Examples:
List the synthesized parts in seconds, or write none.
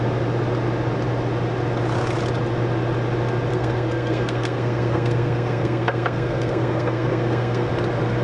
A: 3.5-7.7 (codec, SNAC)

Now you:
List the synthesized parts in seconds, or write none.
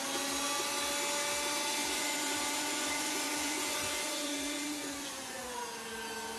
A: 1.8-5.6 (vocoder, Vocos)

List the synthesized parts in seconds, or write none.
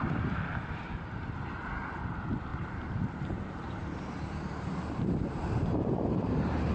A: 2.5-6.7 (vocoder, BigVGAN v2)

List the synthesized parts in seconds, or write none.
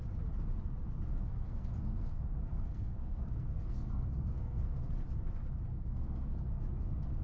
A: 1.1-4.9 (codec, SNAC); 5.7-6.5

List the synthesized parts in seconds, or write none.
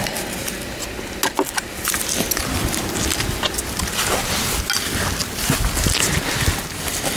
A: none